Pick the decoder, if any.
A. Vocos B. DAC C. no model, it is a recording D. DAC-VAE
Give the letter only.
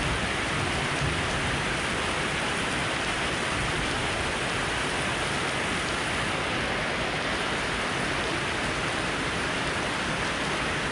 C